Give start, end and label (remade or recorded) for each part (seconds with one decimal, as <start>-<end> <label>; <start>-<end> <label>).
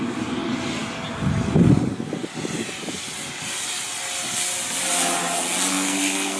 0.0-5.7 recorded; 5.7-6.4 remade